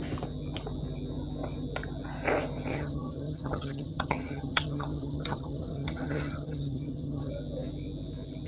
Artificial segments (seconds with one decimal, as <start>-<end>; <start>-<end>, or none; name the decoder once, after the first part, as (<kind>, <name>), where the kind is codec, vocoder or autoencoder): 2.7-7.3 (vocoder, HiFi-GAN)